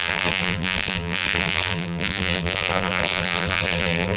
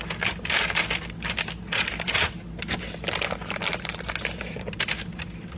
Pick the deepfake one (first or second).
first